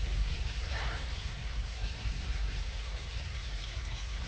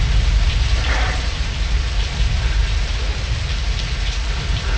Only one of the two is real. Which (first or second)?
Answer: second